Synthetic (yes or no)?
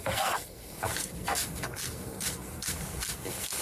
yes